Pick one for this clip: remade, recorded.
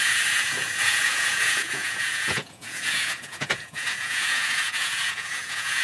remade